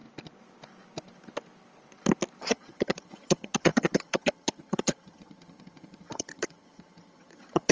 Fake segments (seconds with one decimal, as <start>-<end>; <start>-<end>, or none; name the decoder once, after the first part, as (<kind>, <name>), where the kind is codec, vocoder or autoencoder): 2.4-7.7 (vocoder, HiFi-GAN)